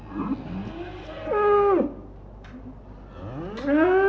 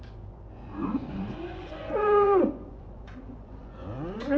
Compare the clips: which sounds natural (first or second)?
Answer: first